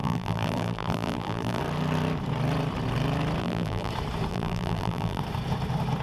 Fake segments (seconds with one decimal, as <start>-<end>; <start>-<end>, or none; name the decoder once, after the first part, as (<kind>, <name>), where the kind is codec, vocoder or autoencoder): 0.0-1.6 (vocoder, BigVGAN v2); 3.4-3.9; 4.3-5.2